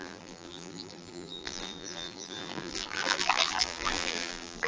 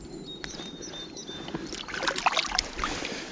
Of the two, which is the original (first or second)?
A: second